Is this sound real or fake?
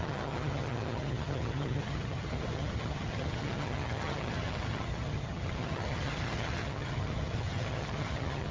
fake